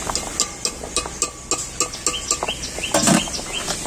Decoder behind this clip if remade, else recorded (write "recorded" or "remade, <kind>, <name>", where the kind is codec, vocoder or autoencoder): recorded